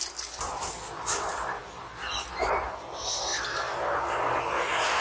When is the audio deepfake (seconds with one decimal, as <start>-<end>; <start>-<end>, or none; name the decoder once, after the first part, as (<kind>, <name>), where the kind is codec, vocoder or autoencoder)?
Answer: none